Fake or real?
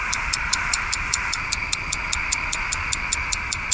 fake